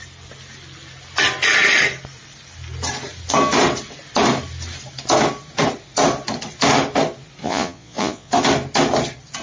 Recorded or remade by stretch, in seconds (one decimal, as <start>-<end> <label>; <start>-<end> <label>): 0.0-7.4 recorded; 7.4-8.3 remade; 8.3-9.4 recorded

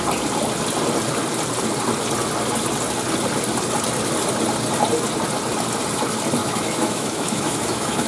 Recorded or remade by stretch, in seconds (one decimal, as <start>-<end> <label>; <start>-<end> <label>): 0.0-6.4 recorded; 6.4-8.1 remade